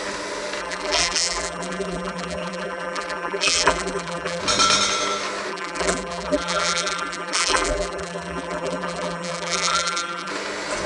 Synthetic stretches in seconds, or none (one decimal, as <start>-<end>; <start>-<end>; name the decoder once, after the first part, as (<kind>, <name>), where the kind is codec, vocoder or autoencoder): 0.6-4.4 (vocoder, BigVGAN v2); 5.5-10.3